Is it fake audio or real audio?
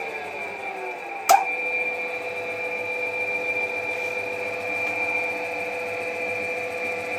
real